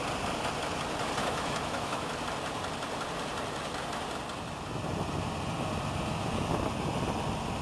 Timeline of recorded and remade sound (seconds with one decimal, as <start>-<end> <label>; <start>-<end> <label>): 0.0-1.2 recorded; 1.2-2.1 remade; 2.1-7.6 recorded